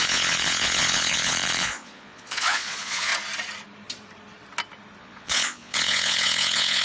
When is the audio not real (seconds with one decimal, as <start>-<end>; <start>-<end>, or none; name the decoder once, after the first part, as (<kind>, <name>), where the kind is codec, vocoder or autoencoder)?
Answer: 0.0-3.1 (vocoder, Vocos); 5.0-6.8